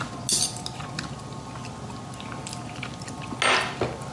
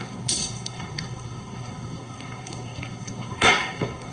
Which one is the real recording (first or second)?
first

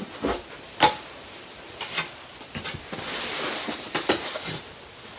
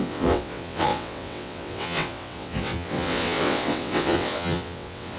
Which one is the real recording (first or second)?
first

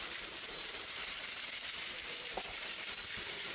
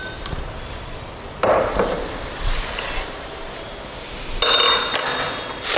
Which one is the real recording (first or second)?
second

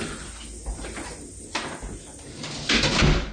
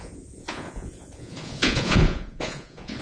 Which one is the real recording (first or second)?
first